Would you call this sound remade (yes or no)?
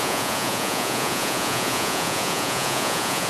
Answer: yes